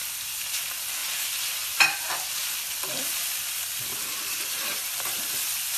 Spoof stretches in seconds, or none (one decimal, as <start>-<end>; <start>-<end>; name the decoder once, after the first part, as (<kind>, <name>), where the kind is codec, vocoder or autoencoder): 3.9-4.9 (vocoder, BigVGAN v2)